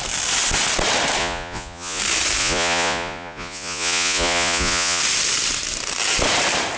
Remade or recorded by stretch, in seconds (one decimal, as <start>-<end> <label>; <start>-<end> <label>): 0.0-1.2 recorded; 1.2-2.0 remade; 2.0-2.4 recorded; 2.4-5.0 remade; 5.0-6.8 recorded

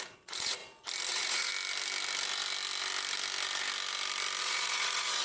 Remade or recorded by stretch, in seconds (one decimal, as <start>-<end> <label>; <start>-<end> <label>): 0.0-0.6 remade; 0.6-1.1 recorded; 1.1-1.5 remade; 1.5-4.4 recorded; 4.4-5.2 remade

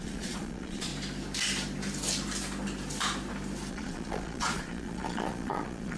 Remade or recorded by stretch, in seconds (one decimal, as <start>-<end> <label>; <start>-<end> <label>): 0.0-0.9 remade; 0.9-3.7 recorded; 3.7-6.0 remade

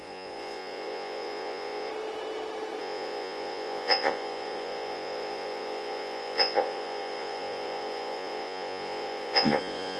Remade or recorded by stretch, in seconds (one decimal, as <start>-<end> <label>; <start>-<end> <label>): 0.0-1.9 remade; 1.9-2.8 recorded; 2.8-10.0 remade